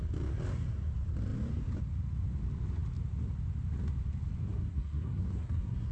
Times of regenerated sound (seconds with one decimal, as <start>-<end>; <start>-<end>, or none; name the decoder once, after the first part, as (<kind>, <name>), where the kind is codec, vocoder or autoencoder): 4.4-5.9 (codec, SNAC)